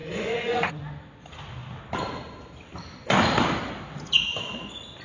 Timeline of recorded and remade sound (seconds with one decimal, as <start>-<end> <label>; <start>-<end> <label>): 0.0-0.8 remade; 0.8-5.0 recorded